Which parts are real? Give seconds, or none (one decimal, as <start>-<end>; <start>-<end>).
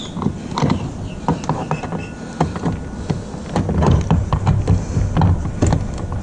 0.0-6.2